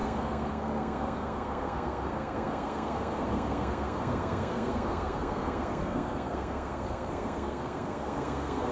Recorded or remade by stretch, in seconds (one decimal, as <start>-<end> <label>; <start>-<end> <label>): 0.0-8.7 remade